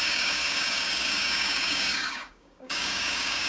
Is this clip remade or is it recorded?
remade